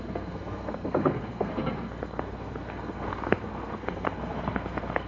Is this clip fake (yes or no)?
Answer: yes